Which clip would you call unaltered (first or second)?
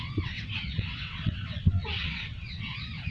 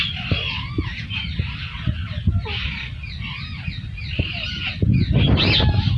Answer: second